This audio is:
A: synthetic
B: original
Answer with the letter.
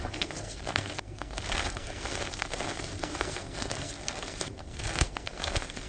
A